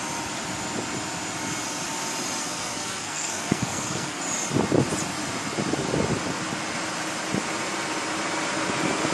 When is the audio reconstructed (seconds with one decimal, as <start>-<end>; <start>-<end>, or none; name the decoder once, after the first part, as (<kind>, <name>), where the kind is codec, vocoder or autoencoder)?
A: 2.4-4.2 (codec, SNAC)